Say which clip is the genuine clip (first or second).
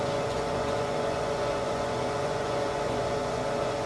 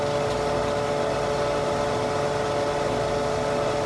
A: second